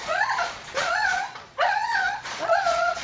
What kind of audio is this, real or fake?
fake